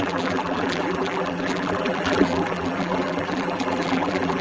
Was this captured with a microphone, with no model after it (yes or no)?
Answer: no